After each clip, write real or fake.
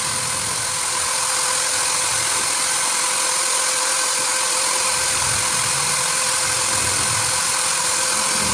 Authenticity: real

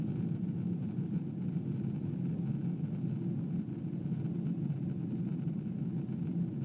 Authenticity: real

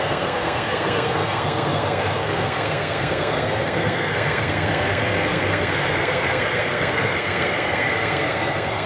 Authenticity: fake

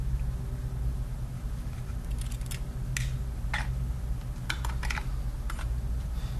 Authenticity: real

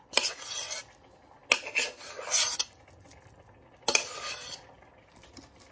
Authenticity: real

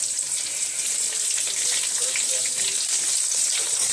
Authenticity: fake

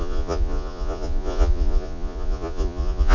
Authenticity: fake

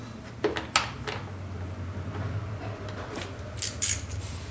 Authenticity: real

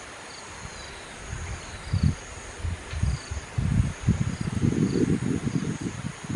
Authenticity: real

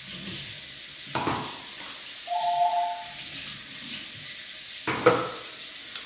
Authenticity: real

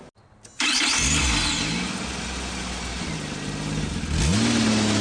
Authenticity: real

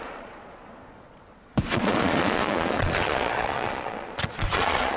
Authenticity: fake